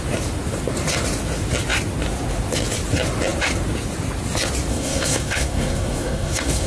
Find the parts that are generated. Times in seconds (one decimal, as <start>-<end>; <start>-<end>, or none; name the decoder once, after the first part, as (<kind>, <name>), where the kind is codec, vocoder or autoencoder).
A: 4.7-6.7 (codec, SNAC)